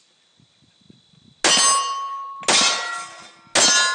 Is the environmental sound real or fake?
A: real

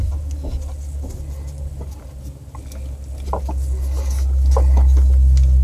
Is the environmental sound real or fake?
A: real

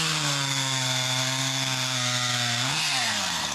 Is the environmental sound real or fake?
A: fake